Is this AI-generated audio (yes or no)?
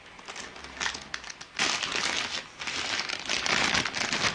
no